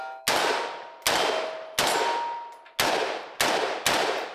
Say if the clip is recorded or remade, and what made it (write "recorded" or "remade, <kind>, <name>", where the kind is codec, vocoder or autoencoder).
recorded